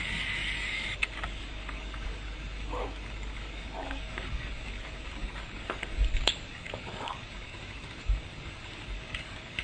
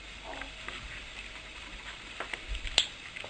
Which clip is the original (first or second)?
second